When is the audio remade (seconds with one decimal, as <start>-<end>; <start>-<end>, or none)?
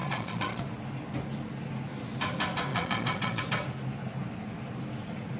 0.0-0.6; 2.7-3.4